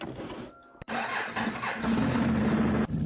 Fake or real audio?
real